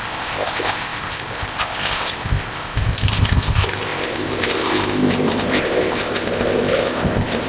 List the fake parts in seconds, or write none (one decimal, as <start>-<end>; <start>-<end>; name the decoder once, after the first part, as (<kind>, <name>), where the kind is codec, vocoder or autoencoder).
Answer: 0.0-7.5 (codec, ZipCodec)